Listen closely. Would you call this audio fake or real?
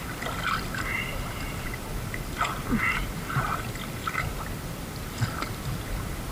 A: real